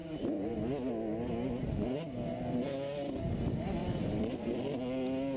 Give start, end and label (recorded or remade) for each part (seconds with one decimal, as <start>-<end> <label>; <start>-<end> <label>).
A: 0.0-3.8 recorded; 3.8-4.6 remade; 4.6-5.4 recorded